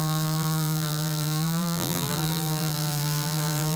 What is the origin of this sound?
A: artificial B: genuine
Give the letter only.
A